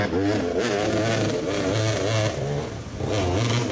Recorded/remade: recorded